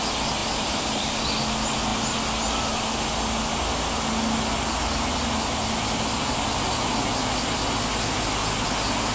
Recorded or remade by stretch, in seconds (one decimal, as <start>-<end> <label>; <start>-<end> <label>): 0.0-0.4 recorded; 0.4-1.0 remade; 1.0-9.1 recorded